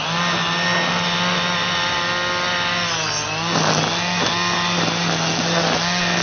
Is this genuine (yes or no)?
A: yes